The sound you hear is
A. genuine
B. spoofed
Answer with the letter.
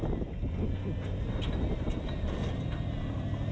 A